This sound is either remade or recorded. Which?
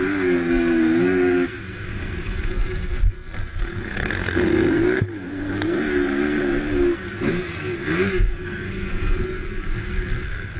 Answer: remade